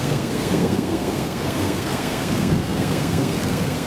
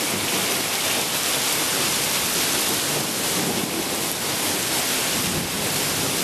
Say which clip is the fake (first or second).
first